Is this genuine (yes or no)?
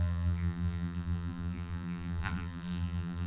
no